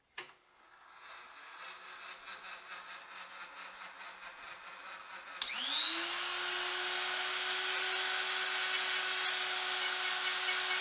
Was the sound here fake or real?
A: real